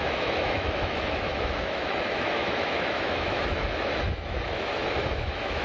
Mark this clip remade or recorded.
remade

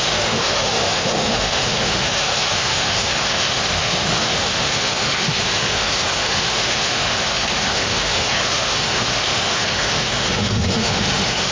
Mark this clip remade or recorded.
remade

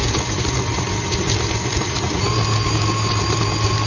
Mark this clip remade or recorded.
recorded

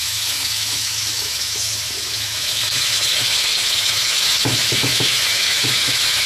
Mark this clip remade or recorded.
remade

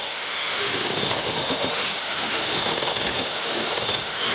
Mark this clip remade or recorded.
remade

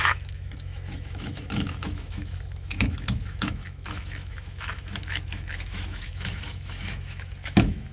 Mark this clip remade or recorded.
remade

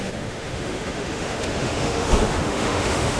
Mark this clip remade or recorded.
remade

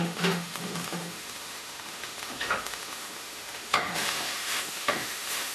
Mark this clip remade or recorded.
remade